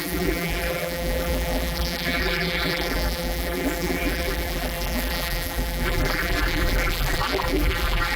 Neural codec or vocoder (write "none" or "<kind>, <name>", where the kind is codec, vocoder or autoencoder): vocoder, BigVGAN v2